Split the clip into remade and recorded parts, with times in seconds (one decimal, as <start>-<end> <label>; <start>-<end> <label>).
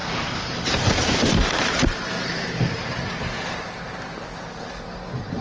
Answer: 0.0-3.2 remade; 3.2-5.4 recorded